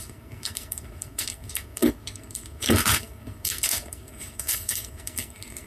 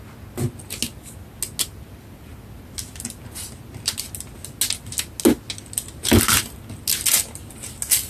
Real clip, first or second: second